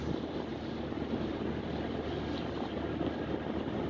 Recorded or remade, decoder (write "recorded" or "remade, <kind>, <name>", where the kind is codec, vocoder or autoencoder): recorded